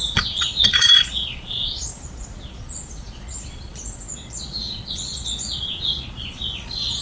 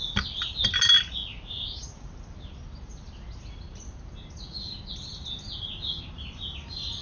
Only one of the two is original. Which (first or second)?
second